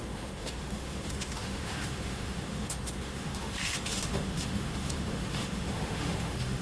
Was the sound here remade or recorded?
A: remade